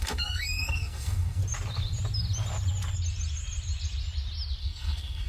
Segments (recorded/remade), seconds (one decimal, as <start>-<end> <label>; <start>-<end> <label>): 0.0-1.4 remade; 1.4-4.6 recorded; 4.6-5.3 remade